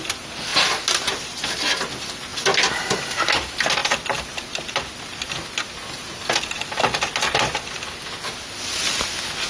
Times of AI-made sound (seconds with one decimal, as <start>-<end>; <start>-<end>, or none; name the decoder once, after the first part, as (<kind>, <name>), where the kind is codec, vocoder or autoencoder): none

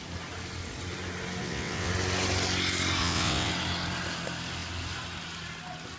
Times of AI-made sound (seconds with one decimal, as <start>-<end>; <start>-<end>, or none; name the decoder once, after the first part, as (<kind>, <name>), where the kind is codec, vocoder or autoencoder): 1.4-1.9 (vocoder, WaveNeXt); 3.0-3.5

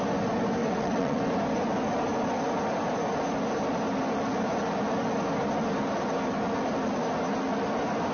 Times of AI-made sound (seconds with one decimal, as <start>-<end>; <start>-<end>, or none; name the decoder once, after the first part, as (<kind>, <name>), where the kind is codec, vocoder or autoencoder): 0.6-1.2 (vocoder, WaveNeXt)